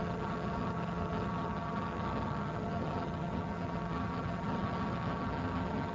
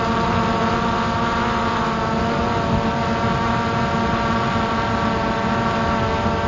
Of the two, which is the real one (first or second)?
second